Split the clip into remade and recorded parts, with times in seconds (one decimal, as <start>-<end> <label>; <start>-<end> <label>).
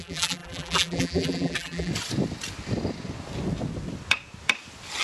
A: 0.0-1.9 remade; 1.9-5.0 recorded